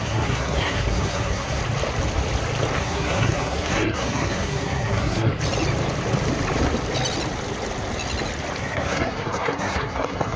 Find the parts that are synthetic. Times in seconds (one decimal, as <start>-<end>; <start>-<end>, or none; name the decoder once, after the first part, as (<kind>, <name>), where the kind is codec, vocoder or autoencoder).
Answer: 0.0-1.6 (codec, SNAC); 2.8-5.3; 8.6-10.4

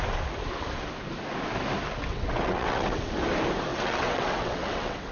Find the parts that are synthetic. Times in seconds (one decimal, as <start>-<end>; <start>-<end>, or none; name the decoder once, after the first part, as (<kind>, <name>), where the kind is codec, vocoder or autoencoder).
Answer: 2.1-3.1 (vocoder, WaveNeXt); 3.7-5.1

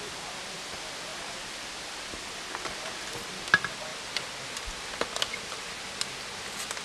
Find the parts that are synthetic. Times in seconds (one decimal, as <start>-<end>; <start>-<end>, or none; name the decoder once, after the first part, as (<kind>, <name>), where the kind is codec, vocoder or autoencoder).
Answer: 1.1-2.5 (vocoder, BigVGAN v2); 3.9-4.4